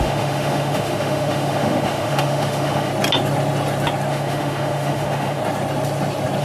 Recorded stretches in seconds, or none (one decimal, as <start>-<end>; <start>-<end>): 2.9-4.1; 5.4-6.4